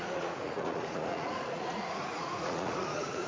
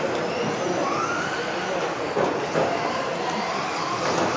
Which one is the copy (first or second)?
first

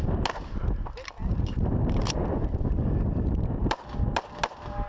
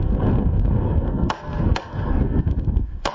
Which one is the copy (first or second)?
second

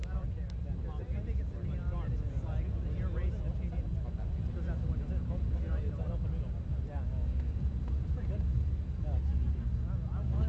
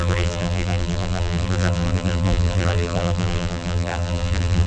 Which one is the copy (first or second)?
second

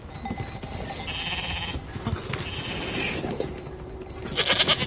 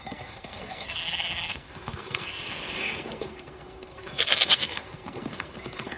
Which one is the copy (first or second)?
second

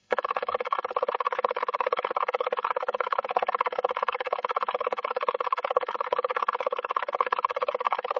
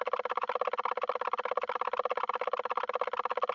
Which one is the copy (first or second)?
first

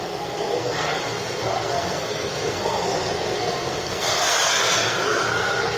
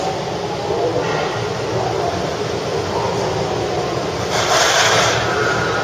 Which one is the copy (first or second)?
first